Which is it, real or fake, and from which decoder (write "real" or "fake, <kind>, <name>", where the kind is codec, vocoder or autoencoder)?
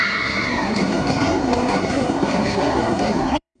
fake, codec, SNAC